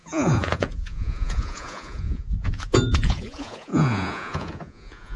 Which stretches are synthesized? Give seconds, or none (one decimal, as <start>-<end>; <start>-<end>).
0.0-5.2